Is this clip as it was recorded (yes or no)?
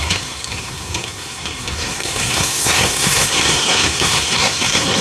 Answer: no